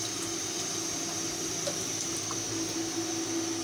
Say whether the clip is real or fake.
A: real